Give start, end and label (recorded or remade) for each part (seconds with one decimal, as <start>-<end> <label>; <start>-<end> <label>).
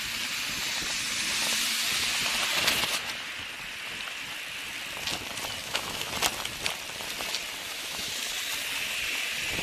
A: 0.0-5.6 recorded; 5.6-6.1 remade; 6.1-7.6 recorded; 7.6-8.1 remade; 8.1-9.6 recorded